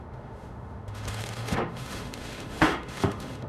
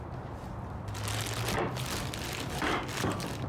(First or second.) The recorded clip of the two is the second